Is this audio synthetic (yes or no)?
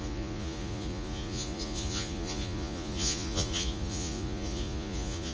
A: yes